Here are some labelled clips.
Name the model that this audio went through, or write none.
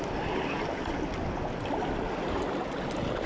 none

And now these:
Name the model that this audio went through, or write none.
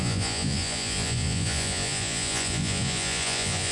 vocoder, Vocos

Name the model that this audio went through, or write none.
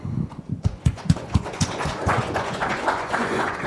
vocoder, Vocos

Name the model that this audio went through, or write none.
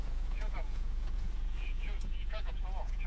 vocoder, Vocos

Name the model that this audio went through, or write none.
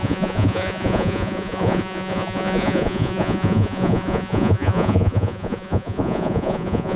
vocoder, Vocos